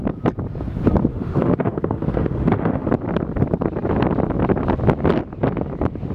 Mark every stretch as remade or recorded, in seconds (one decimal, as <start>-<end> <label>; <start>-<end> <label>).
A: 0.0-1.1 recorded; 1.1-2.9 remade; 2.9-6.1 recorded